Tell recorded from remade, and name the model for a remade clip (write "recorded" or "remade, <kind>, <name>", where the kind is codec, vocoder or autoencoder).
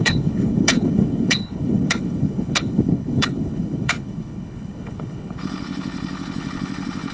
remade, codec, HILCodec